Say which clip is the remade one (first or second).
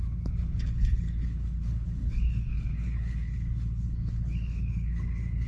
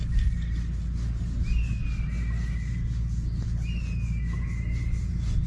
first